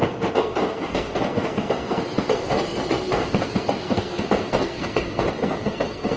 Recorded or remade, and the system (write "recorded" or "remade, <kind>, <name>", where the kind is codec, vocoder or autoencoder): remade, codec, SNAC